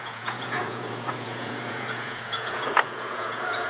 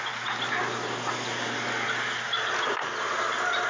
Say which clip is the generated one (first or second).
first